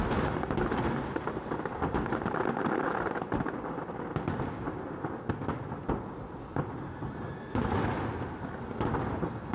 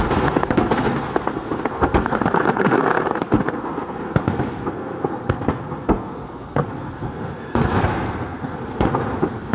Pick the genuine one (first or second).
first